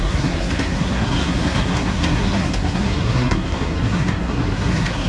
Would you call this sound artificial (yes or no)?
yes